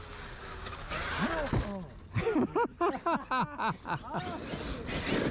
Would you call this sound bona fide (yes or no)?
yes